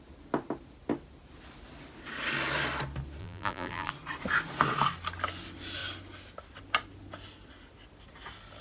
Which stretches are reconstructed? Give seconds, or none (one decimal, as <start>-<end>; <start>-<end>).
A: 3.2-3.9